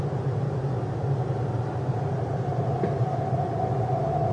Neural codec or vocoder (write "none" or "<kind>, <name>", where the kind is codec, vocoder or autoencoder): none